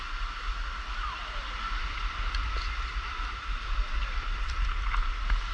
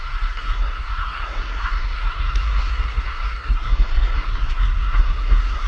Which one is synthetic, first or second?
second